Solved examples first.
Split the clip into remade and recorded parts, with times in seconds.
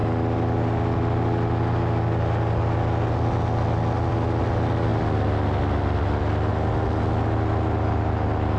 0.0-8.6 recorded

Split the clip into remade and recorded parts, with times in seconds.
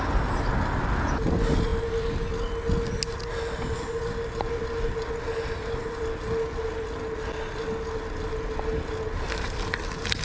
0.0-10.2 recorded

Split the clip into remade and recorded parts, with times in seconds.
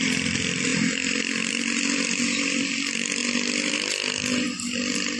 0.0-0.7 remade; 0.7-1.5 recorded; 1.5-3.2 remade; 3.2-3.7 recorded; 3.7-5.2 remade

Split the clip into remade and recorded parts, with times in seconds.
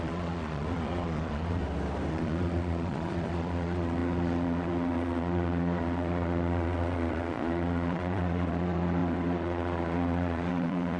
0.0-1.6 remade; 1.6-2.1 recorded; 2.1-11.0 remade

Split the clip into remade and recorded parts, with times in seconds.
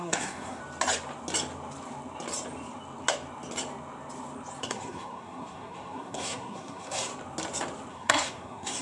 0.0-0.6 remade; 0.6-4.6 recorded; 4.6-7.1 remade; 7.1-7.9 recorded; 7.9-8.8 remade